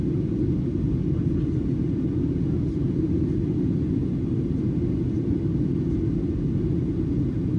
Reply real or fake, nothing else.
real